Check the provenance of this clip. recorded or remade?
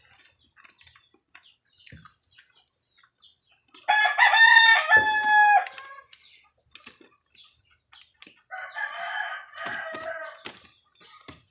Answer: recorded